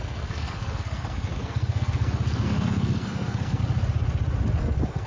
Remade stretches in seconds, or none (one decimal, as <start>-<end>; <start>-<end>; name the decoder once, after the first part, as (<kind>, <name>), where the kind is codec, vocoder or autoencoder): 0.0-3.6 (codec, SNAC); 4.6-5.1